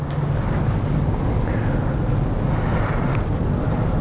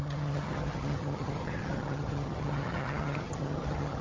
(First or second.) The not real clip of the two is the second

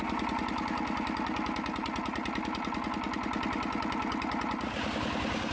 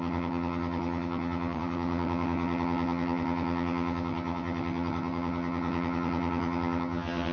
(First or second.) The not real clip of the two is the second